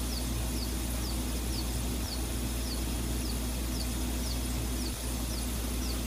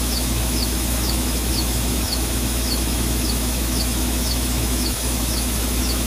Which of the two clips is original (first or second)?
first